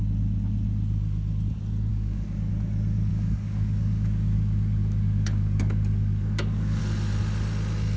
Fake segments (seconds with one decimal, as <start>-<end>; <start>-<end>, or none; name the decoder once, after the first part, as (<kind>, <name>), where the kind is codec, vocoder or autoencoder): 1.9-2.5 (codec, DAC); 3.1-6.8